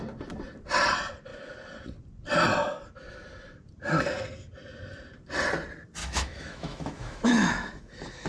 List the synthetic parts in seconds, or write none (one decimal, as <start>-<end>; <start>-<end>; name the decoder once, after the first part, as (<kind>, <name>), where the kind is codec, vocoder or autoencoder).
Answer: 6.0-8.3 (autoencoder, DAC-VAE)

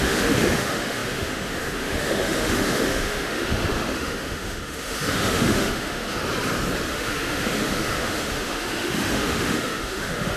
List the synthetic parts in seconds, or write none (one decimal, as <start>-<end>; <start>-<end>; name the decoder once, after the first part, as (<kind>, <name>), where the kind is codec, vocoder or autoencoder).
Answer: 0.0-6.2 (autoencoder, DAC-VAE); 6.9-10.4

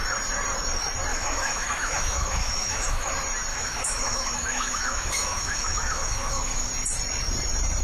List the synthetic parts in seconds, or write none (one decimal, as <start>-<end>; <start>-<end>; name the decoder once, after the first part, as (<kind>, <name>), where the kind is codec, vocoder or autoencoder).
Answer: 1.1-3.1 (autoencoder, DAC-VAE); 3.5-6.7

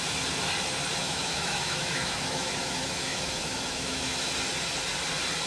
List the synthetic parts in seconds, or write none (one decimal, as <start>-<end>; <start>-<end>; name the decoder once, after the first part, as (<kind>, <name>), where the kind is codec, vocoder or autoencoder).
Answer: 1.0-4.3 (autoencoder, DAC-VAE)

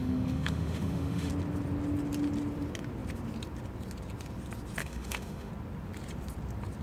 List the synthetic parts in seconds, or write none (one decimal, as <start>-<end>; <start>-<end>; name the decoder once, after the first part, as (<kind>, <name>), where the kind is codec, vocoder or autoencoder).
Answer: 0.0-1.3 (autoencoder, DAC-VAE); 4.8-5.5

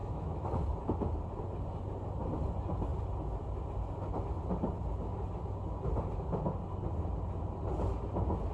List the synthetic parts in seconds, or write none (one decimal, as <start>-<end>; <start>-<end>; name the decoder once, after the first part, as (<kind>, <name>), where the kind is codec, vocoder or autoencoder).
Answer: 0.0-0.5 (autoencoder, DAC-VAE)

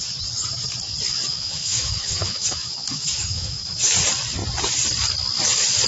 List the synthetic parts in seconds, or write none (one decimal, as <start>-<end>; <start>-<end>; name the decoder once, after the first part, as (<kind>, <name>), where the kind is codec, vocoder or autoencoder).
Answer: 1.3-3.9 (autoencoder, DAC-VAE)

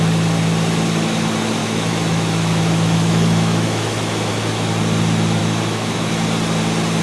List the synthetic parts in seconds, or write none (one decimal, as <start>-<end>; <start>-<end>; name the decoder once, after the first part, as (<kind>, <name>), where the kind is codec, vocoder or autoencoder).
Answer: 1.6-4.3 (autoencoder, DAC-VAE); 5.4-6.1